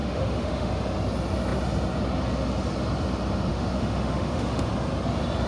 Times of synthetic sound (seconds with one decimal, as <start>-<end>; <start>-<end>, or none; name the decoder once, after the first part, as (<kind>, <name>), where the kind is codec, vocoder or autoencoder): 0.0-0.7 (autoencoder, DAC-VAE); 3.5-4.7